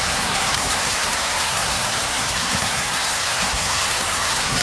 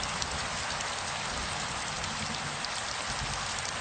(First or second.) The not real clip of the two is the first